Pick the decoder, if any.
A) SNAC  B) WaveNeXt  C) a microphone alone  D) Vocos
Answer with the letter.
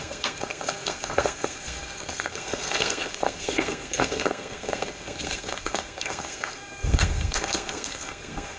A